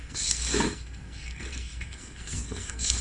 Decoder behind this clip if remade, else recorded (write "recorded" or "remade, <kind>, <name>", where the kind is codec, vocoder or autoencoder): remade, codec, SNAC